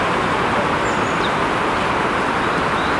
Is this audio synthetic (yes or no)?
yes